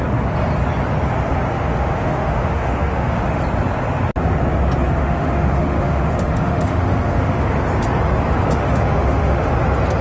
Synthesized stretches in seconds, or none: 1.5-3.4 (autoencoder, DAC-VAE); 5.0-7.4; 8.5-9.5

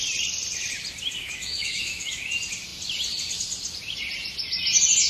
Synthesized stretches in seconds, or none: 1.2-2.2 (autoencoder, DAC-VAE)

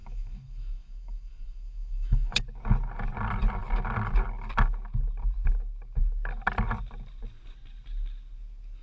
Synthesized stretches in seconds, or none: 0.0-2.4 (autoencoder, DAC-VAE)

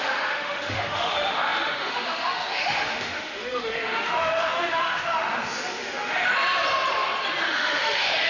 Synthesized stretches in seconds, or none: 0.0-6.3 (autoencoder, DAC-VAE); 7.4-8.3

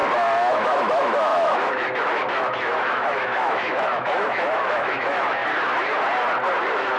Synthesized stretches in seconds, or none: 0.5-5.4 (autoencoder, DAC-VAE); 6.6-7.0

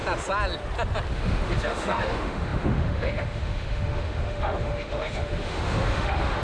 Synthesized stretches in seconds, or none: 1.1-6.4 (autoencoder, DAC-VAE)